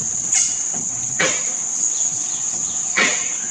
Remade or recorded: remade